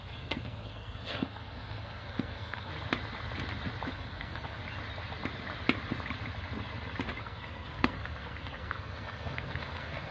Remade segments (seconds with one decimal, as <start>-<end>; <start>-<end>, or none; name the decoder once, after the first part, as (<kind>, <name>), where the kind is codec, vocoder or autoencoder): 0.0-2.7 (codec, SNAC); 3.9-4.6; 7.2-10.1